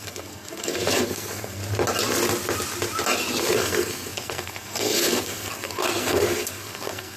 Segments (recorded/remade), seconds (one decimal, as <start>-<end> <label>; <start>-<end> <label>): 0.0-1.6 remade; 1.6-3.4 recorded; 3.4-7.2 remade